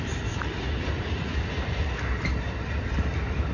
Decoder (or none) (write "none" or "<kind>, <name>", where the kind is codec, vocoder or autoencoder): vocoder, BigVGAN v2